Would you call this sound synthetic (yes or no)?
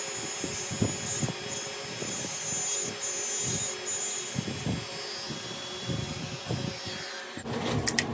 no